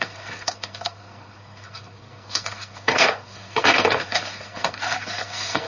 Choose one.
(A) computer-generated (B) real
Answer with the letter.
A